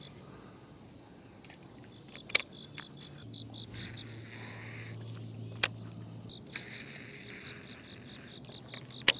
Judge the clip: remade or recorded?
recorded